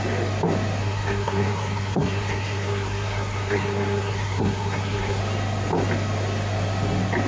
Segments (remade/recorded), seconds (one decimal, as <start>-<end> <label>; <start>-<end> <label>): 0.0-0.8 recorded; 0.8-5.2 remade; 5.2-7.3 recorded